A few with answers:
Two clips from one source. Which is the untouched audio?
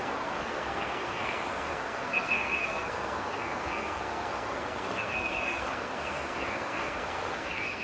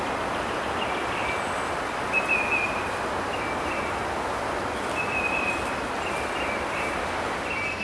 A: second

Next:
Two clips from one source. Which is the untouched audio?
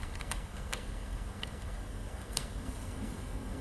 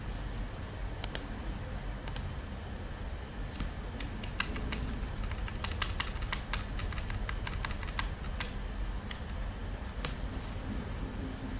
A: second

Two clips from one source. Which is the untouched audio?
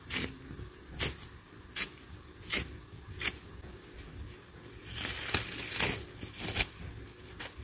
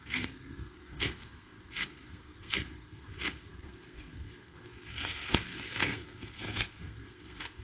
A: first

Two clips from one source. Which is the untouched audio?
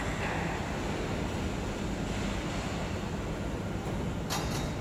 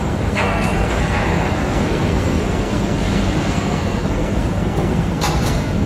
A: first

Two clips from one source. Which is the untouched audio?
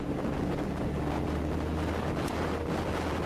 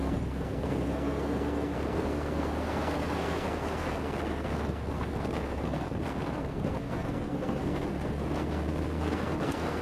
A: first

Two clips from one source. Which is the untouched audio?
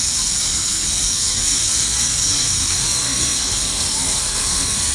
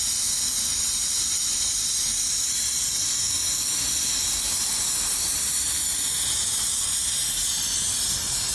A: second